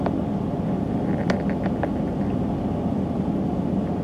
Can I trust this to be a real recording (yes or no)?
yes